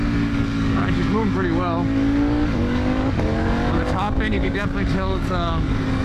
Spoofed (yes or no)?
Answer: yes